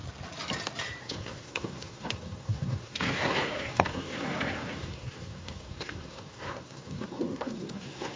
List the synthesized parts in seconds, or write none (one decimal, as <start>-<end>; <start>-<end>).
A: 1.0-8.2